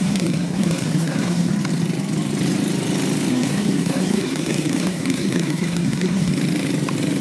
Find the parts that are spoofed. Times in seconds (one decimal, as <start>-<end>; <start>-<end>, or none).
0.0-1.5; 3.3-6.3